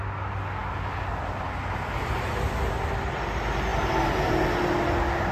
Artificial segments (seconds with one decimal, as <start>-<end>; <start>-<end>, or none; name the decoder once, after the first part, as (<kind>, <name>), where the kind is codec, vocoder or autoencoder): none